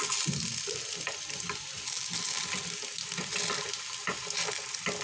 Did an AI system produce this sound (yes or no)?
no